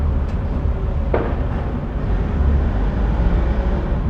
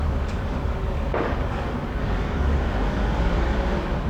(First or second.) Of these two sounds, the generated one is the second